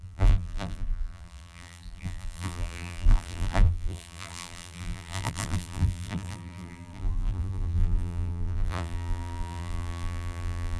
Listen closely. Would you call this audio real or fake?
fake